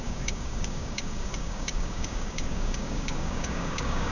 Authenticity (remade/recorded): remade